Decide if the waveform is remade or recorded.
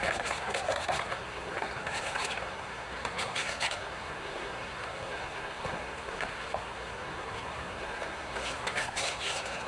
remade